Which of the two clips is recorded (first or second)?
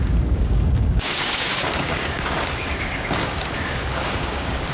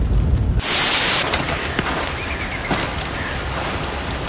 second